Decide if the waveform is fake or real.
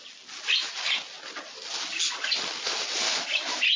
real